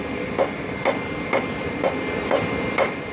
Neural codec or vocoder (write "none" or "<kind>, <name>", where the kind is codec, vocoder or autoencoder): none